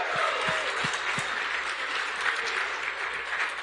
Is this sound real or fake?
real